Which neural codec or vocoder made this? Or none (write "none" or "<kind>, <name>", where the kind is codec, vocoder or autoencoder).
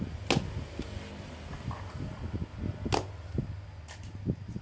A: none